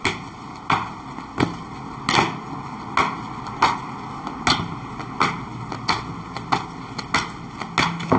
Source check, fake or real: real